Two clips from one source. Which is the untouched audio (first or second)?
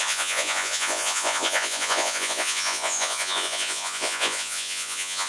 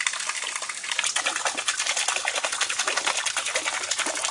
second